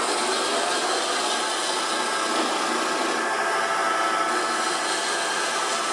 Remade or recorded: recorded